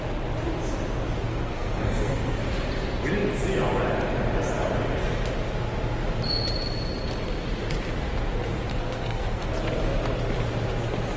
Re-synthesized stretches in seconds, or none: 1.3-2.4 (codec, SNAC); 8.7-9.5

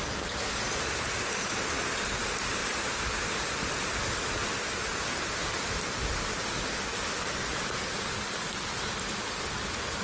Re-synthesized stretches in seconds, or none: none